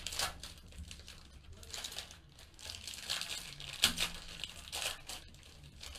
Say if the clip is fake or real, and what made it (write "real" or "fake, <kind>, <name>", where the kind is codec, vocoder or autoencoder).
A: real